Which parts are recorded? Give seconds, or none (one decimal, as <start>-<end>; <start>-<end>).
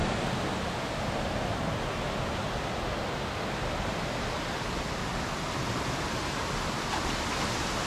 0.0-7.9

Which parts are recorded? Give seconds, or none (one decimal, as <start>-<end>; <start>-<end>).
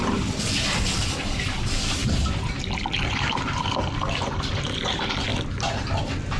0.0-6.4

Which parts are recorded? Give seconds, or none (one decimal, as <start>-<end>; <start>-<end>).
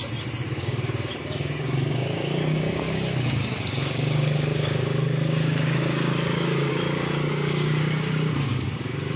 0.0-0.5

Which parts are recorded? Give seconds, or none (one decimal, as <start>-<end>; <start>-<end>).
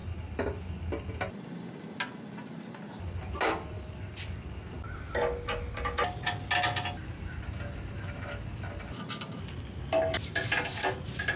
0.0-11.4